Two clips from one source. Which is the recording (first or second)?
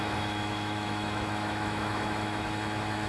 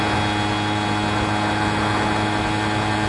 second